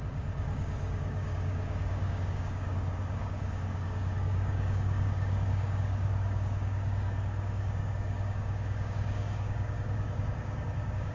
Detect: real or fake fake